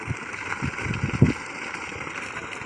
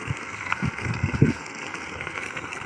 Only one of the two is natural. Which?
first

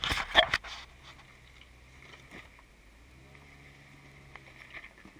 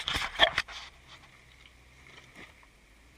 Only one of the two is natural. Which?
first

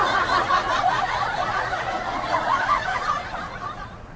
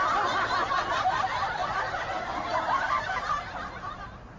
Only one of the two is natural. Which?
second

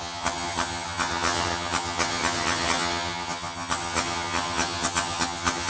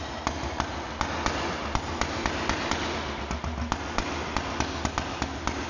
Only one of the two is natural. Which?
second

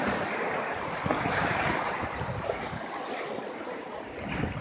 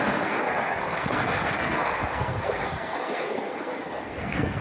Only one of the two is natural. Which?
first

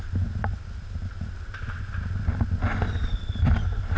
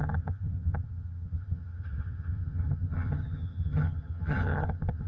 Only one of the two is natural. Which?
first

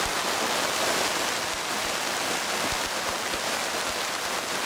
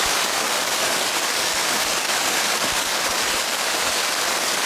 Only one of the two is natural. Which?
first